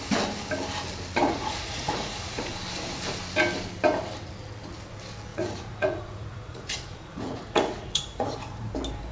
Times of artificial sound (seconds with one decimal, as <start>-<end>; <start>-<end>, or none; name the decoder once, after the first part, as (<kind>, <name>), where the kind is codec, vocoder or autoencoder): 1.2-2.5 (vocoder, Vocos); 5.3-8.7